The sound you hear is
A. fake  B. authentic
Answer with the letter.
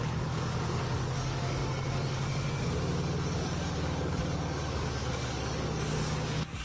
A